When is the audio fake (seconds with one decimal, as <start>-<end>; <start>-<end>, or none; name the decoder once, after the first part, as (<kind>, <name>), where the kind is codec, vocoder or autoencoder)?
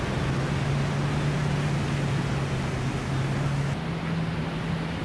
none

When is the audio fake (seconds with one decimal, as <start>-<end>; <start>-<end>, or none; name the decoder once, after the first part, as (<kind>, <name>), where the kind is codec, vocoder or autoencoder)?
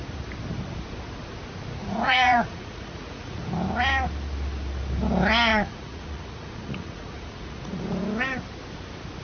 1.8-3.4 (vocoder, Vocos); 5.5-7.8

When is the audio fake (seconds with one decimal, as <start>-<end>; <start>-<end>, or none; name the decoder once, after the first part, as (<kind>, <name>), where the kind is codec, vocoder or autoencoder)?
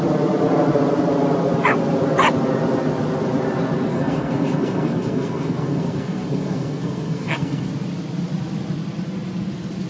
3.9-7.7 (codec, SNAC)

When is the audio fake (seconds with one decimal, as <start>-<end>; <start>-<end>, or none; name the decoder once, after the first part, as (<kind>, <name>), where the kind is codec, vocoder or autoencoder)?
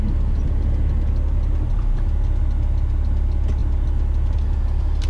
none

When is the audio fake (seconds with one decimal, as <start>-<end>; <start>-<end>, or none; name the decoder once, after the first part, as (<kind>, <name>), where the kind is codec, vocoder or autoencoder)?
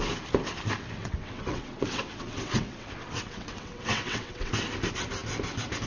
1.0-4.5 (vocoder, WaveNeXt)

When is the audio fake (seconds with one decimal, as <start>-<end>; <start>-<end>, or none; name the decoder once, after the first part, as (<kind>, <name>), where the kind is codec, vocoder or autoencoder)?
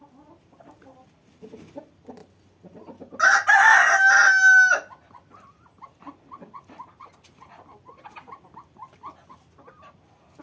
none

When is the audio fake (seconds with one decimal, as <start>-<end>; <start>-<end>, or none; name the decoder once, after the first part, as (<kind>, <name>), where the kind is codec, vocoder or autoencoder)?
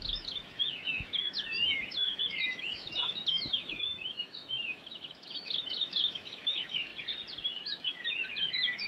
0.0-6.9 (autoencoder, DAC-VAE); 7.5-8.9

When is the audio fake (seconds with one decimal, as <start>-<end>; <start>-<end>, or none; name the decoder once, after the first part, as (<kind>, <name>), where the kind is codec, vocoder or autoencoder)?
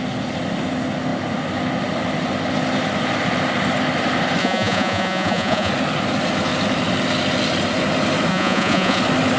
4.4-5.7 (vocoder, Vocos); 8.3-9.0